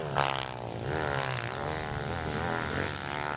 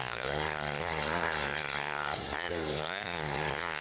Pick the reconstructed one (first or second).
second